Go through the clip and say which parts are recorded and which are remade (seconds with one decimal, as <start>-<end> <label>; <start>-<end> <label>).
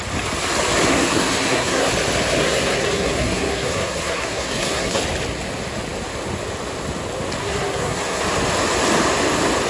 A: 0.0-0.9 recorded; 0.9-1.9 remade; 1.9-2.4 recorded; 2.4-5.0 remade; 5.0-7.4 recorded; 7.4-8.2 remade; 8.2-9.7 recorded